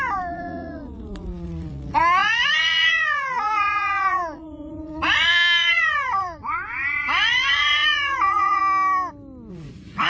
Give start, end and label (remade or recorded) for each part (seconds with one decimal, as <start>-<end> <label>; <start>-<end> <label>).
0.0-8.6 remade; 8.6-9.5 recorded; 9.5-10.1 remade